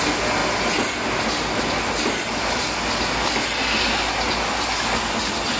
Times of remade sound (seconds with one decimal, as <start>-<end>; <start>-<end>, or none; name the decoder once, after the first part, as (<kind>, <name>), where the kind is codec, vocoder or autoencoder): none